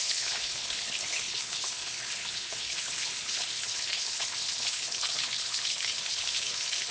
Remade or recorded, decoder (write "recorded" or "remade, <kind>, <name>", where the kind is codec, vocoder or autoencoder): remade, codec, HILCodec